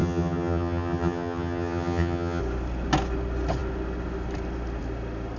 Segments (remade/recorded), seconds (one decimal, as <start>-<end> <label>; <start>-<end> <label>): 0.0-2.4 remade; 2.4-5.4 recorded